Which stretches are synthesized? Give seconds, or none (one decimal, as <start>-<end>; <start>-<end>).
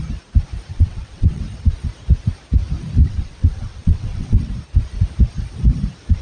0.7-1.4; 3.0-4.5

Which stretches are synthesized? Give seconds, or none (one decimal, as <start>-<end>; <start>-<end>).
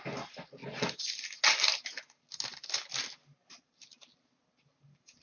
none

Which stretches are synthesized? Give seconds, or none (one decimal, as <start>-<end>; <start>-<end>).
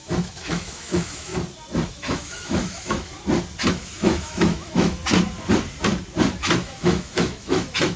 0.0-1.3; 1.9-3.1; 3.7-5.0; 6.4-8.0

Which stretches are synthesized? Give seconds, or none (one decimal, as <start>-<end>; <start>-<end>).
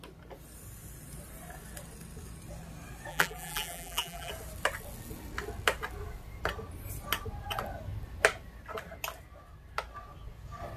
3.1-4.3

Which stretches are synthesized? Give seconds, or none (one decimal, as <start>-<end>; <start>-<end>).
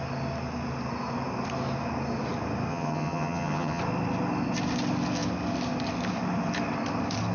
2.7-3.8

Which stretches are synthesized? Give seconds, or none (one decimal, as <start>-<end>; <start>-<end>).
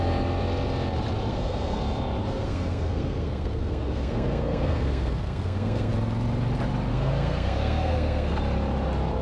1.3-1.8; 2.2-5.9; 6.9-8.4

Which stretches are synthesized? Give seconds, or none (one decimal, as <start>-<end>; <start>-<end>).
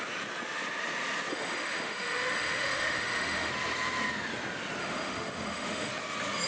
1.3-3.5; 4.8-5.9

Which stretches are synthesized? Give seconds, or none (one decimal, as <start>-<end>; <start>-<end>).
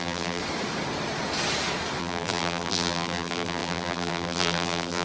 0.0-0.4; 2.0-5.0